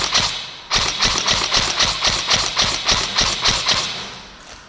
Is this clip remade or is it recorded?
recorded